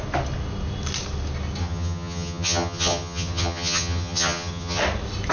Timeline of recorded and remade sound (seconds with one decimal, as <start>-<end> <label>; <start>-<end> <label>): 0.0-1.6 recorded; 1.6-4.8 remade; 4.8-5.3 recorded